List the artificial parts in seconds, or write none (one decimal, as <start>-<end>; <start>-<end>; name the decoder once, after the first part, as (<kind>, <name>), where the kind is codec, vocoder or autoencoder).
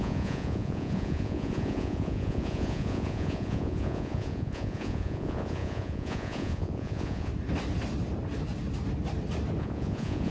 0.0-7.3 (vocoder, Vocos); 9.6-10.3